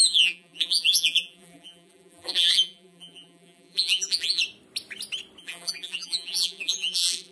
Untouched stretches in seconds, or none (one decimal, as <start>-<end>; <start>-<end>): 4.4-5.4

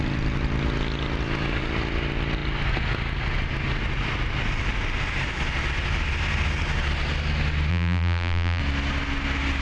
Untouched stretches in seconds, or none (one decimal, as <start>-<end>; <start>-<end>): 0.0-7.7; 8.6-9.6

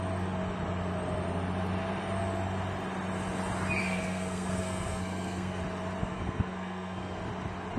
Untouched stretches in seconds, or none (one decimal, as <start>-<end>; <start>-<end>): 0.0-3.8; 5.6-6.0; 7.2-7.8

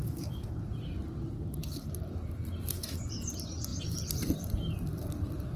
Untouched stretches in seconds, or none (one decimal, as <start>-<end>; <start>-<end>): 1.0-1.6; 3.0-3.7

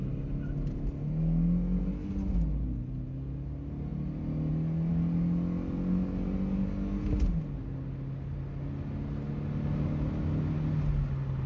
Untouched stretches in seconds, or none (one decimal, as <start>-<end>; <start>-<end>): 0.0-11.5

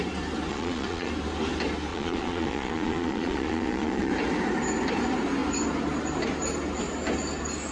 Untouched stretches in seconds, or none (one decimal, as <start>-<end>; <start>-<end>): 0.0-0.5; 1.1-1.9; 4.1-7.7